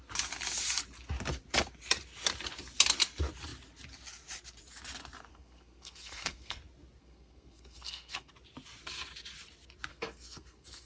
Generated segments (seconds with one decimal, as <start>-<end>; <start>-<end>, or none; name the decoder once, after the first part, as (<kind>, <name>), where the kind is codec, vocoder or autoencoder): 5.3-6.6 (codec, SNAC); 7.0-8.3; 9.9-10.9